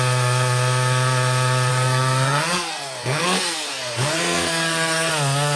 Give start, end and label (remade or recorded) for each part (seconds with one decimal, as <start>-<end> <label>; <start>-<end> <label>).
0.0-1.7 recorded; 1.7-5.1 remade; 5.1-5.6 recorded